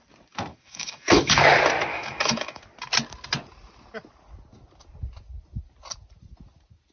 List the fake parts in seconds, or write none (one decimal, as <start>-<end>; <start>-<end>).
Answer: 0.5-1.3; 1.9-2.6